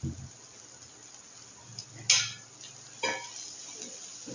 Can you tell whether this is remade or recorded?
recorded